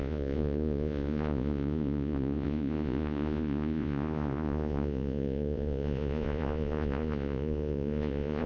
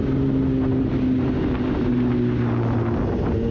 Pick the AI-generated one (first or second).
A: first